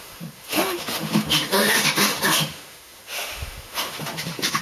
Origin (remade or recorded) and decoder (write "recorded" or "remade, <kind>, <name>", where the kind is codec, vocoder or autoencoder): remade, autoencoder, DAC-VAE